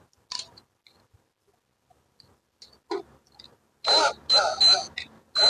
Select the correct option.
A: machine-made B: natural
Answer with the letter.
B